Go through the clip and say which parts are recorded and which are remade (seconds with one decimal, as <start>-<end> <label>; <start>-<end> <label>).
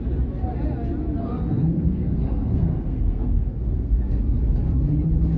0.0-1.2 recorded; 1.2-4.2 remade; 4.2-5.4 recorded